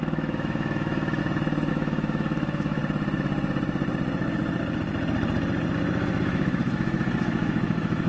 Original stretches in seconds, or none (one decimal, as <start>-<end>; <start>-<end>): 1.2-1.7; 2.8-6.2